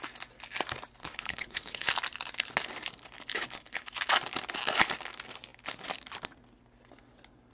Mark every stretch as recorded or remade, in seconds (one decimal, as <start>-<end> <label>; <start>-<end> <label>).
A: 0.0-1.0 recorded; 1.0-1.9 remade; 1.9-3.3 recorded; 3.3-3.9 remade; 3.9-7.5 recorded